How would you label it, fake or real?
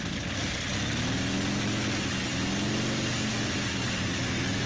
real